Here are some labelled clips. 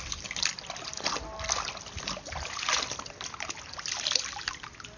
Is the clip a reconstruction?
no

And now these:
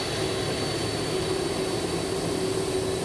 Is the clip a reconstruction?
no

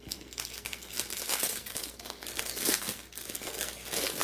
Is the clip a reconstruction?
yes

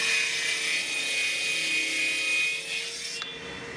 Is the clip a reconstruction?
no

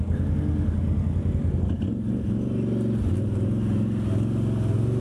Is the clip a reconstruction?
no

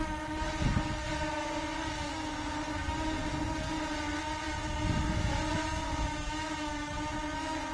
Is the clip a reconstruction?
no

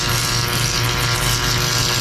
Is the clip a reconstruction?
no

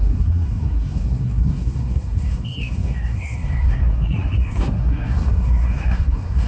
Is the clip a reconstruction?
yes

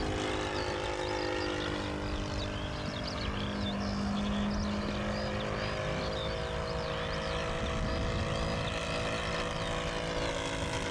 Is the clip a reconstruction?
no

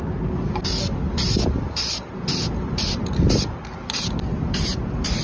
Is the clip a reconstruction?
no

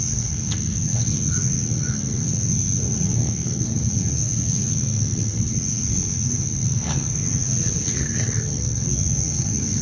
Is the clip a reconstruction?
yes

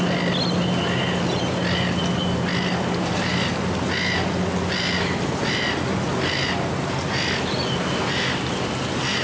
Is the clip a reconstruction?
no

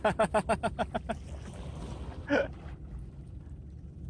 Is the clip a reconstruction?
no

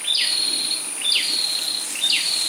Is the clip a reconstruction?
no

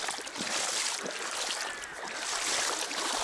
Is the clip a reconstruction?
no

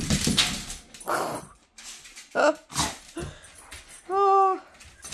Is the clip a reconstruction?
no